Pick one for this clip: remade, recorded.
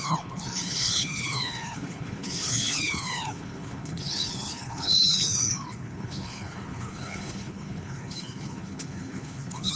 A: remade